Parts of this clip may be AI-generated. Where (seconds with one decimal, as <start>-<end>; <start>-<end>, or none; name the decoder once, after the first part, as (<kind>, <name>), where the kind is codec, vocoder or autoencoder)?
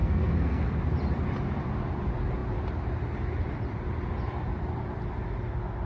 0.0-0.8 (codec, SNAC)